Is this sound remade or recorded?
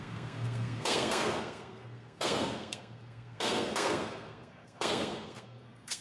remade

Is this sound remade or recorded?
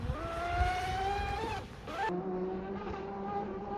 recorded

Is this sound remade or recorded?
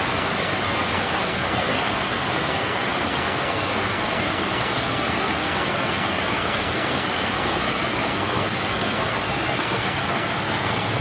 remade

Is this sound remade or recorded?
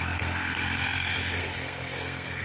remade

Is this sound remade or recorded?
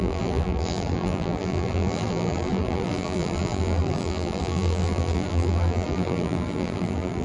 remade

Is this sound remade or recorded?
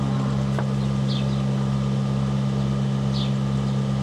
recorded